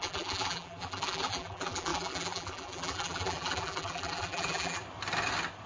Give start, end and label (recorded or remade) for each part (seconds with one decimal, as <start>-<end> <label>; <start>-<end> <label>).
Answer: 0.0-4.8 remade; 4.8-5.7 recorded

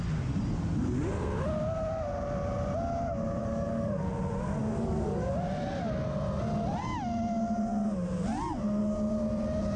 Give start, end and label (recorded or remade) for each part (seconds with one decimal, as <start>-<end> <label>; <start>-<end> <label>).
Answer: 0.0-3.4 recorded; 3.4-4.1 remade; 4.1-4.6 recorded; 4.6-5.3 remade; 5.3-9.8 recorded

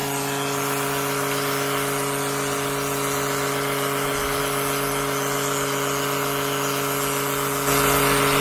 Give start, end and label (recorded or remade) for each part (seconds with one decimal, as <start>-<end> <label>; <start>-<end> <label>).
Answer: 0.0-8.4 recorded

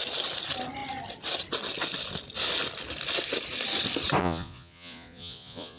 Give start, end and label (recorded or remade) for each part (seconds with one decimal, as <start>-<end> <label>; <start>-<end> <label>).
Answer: 0.0-4.2 recorded; 4.2-5.8 remade

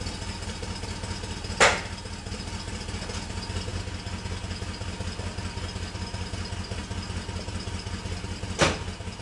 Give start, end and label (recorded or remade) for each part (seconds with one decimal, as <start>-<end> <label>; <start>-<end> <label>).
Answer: 0.0-9.2 recorded

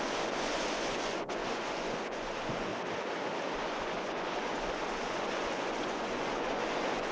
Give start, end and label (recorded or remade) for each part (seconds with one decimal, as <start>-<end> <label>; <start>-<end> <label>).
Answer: 0.0-2.7 remade; 2.7-3.6 recorded; 3.6-7.1 remade

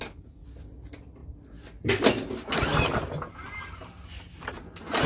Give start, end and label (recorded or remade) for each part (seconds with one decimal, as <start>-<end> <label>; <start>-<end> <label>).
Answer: 0.0-5.1 recorded

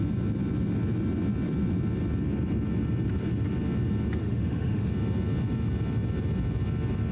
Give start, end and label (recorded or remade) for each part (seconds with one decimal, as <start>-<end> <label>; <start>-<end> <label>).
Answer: 0.0-4.2 recorded; 4.2-4.9 remade; 4.9-7.1 recorded